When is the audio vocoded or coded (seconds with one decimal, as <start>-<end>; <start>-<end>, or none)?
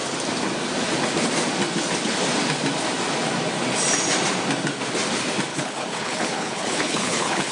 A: 5.5-7.5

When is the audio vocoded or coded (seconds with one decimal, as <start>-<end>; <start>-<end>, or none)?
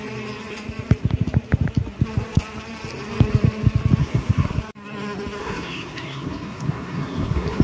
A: 4.0-4.6; 5.4-7.6